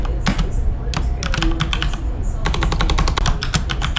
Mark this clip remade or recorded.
recorded